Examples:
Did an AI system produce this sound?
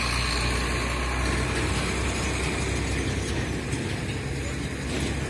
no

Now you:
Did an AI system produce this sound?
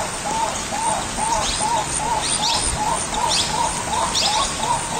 no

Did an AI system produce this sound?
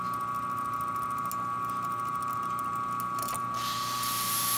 no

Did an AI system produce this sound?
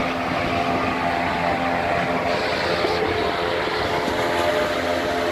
no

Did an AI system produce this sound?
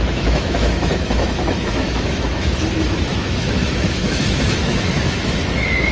yes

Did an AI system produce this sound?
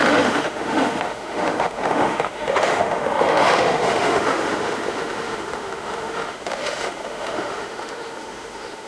yes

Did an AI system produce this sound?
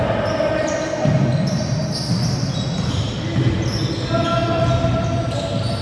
no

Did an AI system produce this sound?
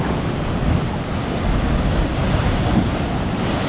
no